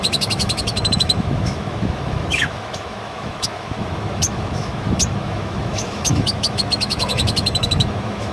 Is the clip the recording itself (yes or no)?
no